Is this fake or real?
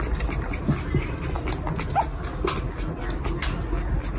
real